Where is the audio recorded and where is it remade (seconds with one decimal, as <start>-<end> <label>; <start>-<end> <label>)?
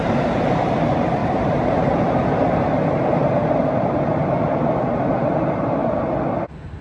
0.0-5.8 remade; 5.8-6.8 recorded